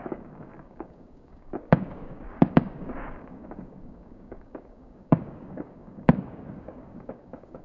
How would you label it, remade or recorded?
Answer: remade